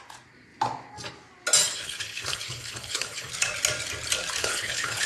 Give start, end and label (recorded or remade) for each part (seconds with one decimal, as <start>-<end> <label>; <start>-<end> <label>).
0.0-1.7 recorded; 1.7-3.3 remade; 3.3-4.4 recorded; 4.4-5.1 remade